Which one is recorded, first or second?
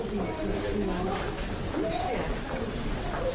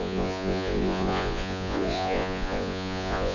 first